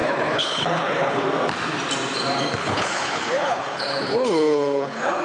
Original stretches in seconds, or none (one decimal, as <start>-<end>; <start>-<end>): 1.2-2.6